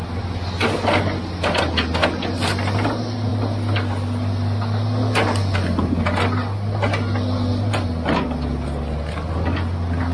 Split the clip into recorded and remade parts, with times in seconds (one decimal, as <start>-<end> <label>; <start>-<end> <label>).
0.0-10.1 recorded